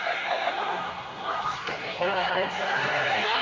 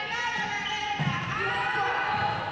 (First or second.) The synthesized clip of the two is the first